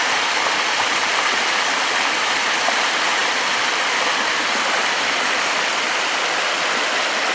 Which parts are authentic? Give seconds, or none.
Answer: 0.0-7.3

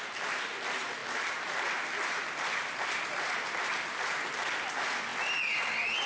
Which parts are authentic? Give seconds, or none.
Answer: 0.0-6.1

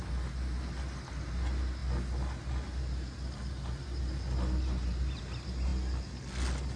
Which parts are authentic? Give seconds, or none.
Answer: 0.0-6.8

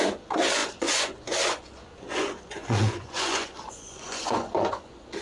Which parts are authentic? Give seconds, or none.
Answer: none